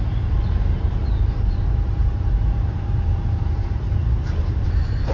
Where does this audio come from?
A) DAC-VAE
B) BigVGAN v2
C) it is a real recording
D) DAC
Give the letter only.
B